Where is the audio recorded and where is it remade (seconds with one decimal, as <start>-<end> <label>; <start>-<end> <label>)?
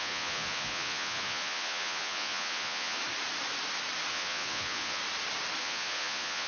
0.0-3.0 remade; 3.0-4.1 recorded; 4.1-5.0 remade; 5.0-5.6 recorded; 5.6-6.5 remade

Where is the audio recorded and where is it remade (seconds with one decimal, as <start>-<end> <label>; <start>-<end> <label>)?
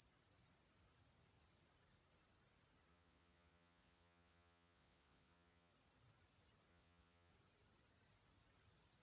0.0-2.9 recorded; 2.9-5.7 remade; 5.7-6.7 recorded; 6.7-7.3 remade; 7.3-9.0 recorded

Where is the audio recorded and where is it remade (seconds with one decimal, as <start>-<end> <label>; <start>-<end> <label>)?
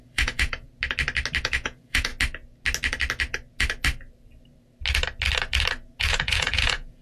0.0-0.7 remade; 0.7-1.4 recorded; 1.4-2.1 remade; 2.1-6.0 recorded; 6.0-7.0 remade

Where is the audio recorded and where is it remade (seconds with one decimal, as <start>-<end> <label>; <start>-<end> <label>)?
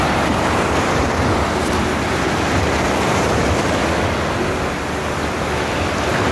0.0-6.3 recorded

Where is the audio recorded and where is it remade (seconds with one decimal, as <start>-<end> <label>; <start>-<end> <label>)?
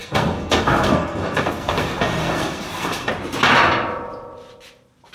0.0-3.1 remade; 3.1-5.1 recorded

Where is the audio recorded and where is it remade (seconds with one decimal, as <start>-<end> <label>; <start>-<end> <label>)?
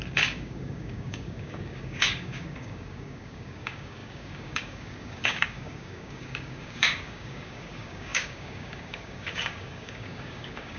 0.0-10.8 remade